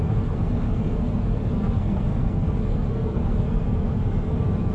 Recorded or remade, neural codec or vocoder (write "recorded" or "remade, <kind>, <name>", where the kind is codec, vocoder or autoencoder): remade, codec, SNAC